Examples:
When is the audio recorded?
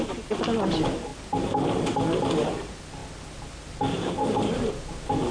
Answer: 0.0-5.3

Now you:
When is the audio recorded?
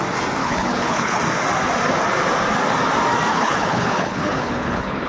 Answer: 0.0-0.4; 1.2-3.3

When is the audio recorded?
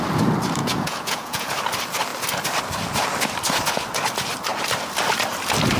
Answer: 0.0-0.6; 1.5-5.8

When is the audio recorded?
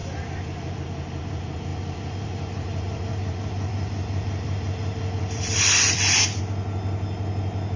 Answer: 0.7-1.7; 6.4-7.8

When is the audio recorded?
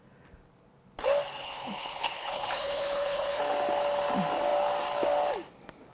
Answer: 0.0-1.4; 3.4-5.9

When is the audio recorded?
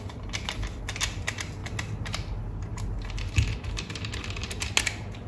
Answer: 0.0-5.3